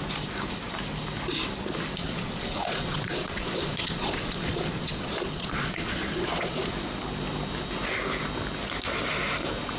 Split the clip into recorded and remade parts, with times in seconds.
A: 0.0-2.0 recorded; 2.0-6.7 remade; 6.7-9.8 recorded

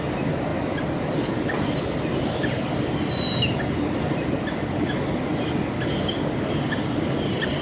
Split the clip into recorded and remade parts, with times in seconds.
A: 0.0-7.6 recorded

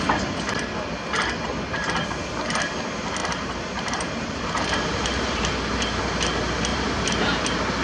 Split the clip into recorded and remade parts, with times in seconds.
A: 0.0-3.2 recorded; 3.2-5.4 remade; 5.4-6.7 recorded; 6.7-7.3 remade; 7.3-7.8 recorded

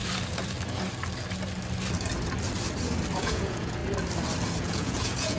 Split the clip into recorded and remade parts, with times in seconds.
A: 0.0-3.2 recorded; 3.2-3.8 remade; 3.8-4.6 recorded; 4.6-5.4 remade

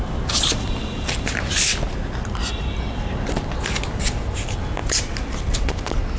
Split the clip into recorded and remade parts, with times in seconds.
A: 0.0-6.2 recorded

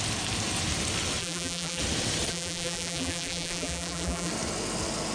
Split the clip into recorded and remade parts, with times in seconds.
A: 0.0-1.2 recorded; 1.2-1.8 remade; 1.8-2.3 recorded; 2.3-4.3 remade; 4.3-5.1 recorded

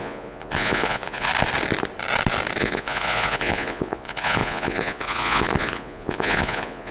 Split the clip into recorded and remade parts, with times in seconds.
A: 0.0-1.3 remade; 1.3-2.6 recorded; 2.6-6.9 remade